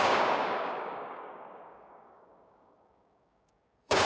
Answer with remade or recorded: remade